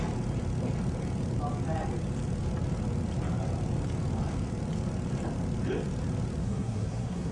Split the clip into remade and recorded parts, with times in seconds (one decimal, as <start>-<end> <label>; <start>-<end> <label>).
0.0-6.4 recorded; 6.4-7.3 remade